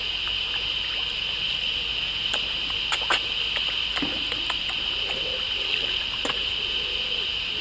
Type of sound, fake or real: real